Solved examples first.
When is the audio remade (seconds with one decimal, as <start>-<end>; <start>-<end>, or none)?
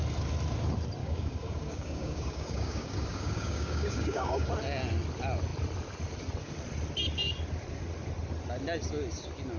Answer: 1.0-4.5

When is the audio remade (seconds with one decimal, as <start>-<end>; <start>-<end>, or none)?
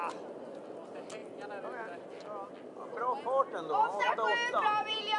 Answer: 3.5-4.3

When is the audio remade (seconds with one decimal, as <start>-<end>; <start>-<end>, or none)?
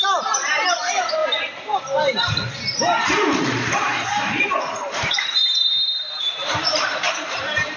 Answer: 0.0-7.8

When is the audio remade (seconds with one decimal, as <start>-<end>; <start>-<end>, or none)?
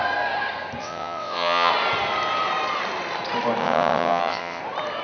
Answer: 0.8-1.7; 3.6-4.6